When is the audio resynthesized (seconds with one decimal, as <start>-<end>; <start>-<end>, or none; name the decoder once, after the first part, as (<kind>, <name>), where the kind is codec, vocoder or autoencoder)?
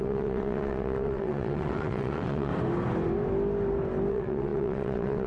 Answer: 0.0-2.5 (vocoder, WaveNeXt); 4.1-5.3